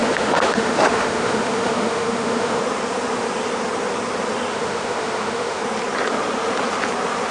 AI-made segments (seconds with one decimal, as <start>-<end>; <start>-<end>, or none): 0.0-2.6; 4.5-5.6